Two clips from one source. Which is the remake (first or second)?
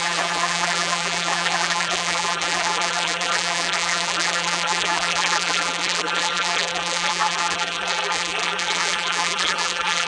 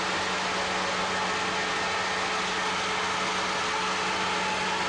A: first